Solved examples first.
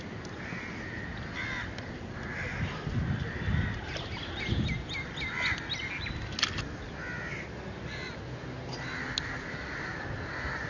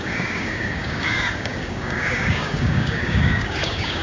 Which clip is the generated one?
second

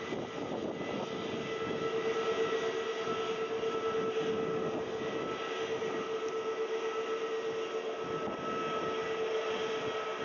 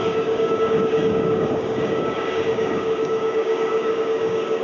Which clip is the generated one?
second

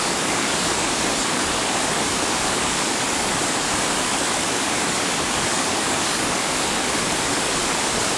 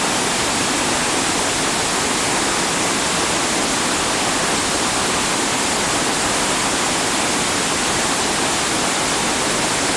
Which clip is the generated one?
first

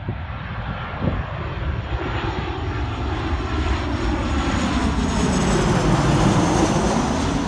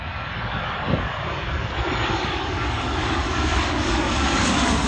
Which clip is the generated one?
second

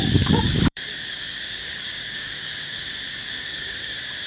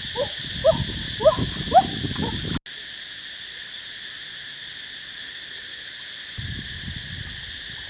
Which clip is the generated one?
first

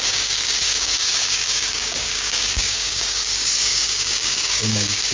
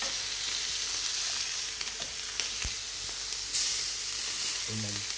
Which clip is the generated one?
first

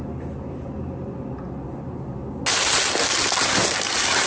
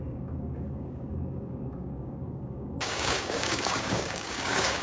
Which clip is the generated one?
second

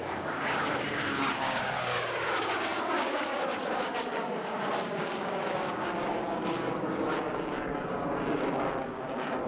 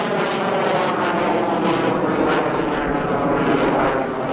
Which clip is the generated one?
first